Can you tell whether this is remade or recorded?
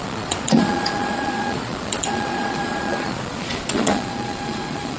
remade